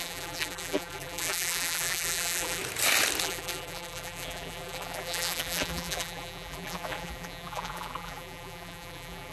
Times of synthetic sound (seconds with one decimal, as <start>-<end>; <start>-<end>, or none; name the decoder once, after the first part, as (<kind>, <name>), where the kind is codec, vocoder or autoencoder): 0.0-2.6 (vocoder, BigVGAN v2); 3.2-9.3